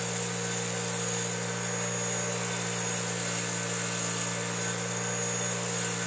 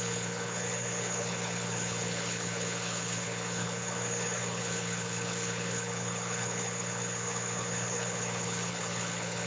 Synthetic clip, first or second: second